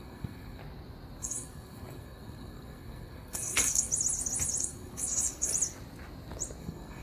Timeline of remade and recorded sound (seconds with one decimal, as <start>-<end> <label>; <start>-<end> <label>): 0.0-0.6 remade; 0.6-1.2 recorded; 1.2-3.9 remade; 3.9-4.6 recorded; 4.6-5.5 remade; 5.5-6.6 recorded; 6.6-7.0 remade